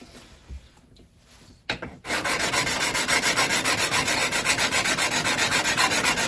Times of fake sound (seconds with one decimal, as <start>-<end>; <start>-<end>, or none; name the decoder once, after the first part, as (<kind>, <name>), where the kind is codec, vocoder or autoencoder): none